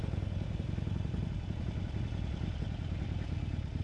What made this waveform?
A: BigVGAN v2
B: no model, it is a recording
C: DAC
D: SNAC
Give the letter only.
B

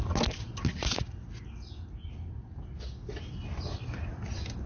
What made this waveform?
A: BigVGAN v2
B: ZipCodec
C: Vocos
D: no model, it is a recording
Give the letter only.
D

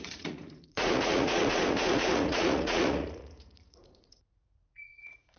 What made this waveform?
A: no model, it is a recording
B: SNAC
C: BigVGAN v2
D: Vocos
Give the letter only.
D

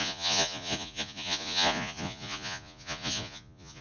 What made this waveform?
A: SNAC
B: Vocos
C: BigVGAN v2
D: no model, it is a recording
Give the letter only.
B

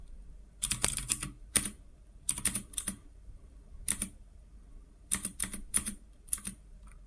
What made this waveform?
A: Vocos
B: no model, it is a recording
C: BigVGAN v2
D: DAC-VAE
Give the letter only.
C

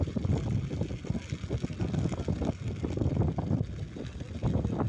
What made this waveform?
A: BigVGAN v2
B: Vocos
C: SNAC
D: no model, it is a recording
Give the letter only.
D